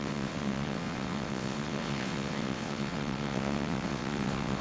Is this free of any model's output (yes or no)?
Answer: no